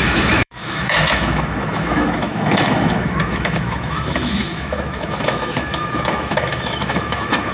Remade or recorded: remade